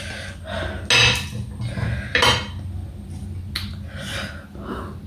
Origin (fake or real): real